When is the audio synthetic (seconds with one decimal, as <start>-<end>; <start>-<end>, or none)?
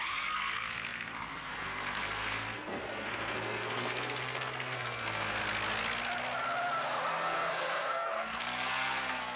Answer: 0.0-5.4; 7.1-9.4